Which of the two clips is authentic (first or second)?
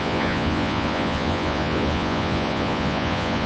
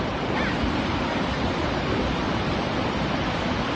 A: second